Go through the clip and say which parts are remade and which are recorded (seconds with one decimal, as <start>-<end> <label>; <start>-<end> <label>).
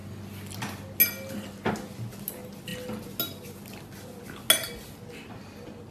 0.0-5.9 recorded